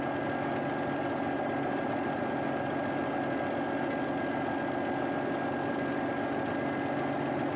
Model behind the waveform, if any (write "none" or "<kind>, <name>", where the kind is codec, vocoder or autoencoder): none